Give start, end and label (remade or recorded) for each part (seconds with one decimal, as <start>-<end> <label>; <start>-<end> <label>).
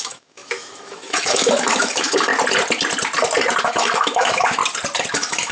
0.0-2.3 remade; 2.3-3.6 recorded; 3.6-4.6 remade; 4.6-5.1 recorded; 5.1-5.5 remade